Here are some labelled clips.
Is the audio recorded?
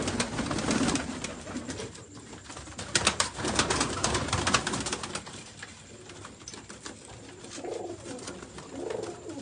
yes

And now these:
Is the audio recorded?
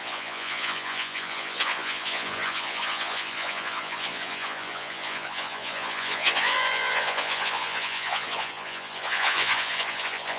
no